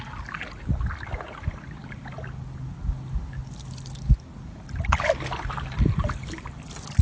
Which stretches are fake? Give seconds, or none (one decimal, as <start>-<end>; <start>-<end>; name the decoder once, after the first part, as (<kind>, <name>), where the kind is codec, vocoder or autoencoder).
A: none